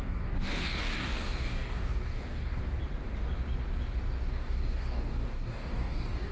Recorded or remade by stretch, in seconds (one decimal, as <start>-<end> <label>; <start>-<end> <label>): 0.0-2.6 remade; 2.6-4.3 recorded; 4.3-6.3 remade